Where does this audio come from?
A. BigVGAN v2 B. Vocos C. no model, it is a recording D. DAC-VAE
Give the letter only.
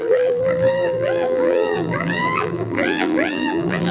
A